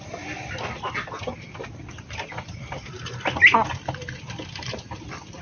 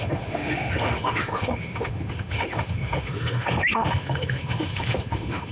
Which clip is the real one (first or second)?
first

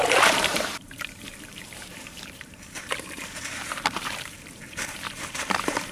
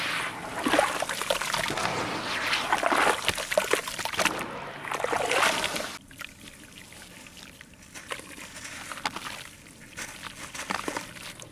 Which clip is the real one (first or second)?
second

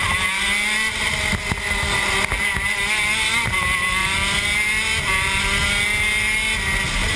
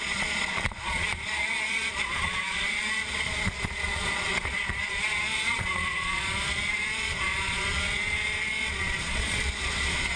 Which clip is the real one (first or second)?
first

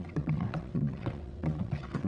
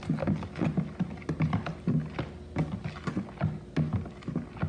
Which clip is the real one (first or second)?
second